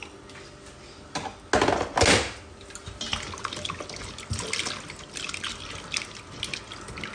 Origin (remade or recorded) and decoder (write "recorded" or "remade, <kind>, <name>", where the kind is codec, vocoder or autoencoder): recorded